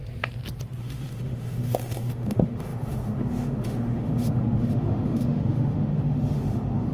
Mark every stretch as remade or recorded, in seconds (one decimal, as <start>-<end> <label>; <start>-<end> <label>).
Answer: 0.0-0.8 recorded; 0.8-6.9 remade